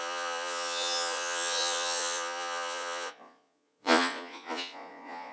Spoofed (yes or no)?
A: yes